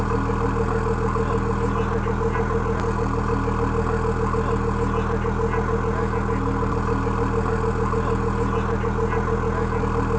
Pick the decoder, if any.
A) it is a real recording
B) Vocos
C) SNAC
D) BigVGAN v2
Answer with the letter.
A